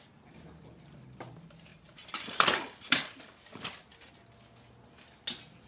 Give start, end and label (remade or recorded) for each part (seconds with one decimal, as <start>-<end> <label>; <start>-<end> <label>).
0.0-1.7 recorded; 1.7-3.1 remade; 3.1-5.7 recorded